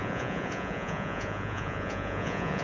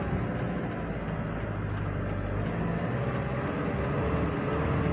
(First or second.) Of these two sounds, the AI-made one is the first